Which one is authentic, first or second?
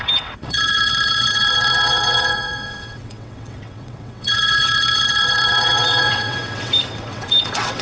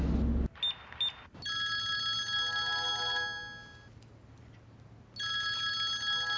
second